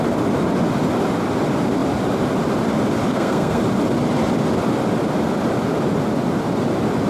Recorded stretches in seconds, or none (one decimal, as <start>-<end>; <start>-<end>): 0.0-3.1; 3.6-7.1